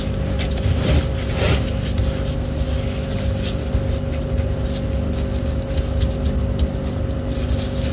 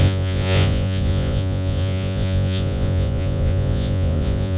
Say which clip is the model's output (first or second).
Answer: second